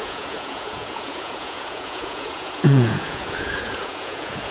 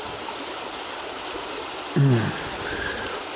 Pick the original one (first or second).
second